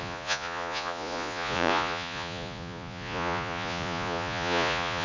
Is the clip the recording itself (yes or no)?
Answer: no